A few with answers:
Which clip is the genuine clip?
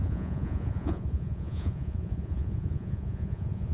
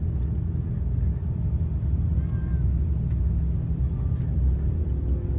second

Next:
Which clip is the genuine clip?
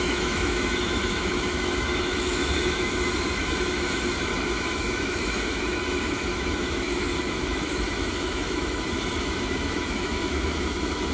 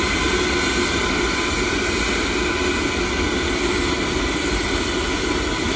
second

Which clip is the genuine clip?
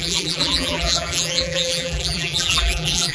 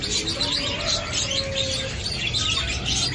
second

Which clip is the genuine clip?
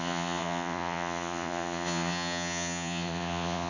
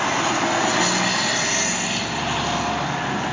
second